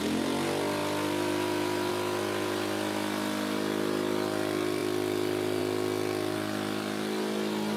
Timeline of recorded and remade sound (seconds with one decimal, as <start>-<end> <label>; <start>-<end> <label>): 0.0-7.8 recorded